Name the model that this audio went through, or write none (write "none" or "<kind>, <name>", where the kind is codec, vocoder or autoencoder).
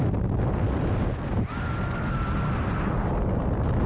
none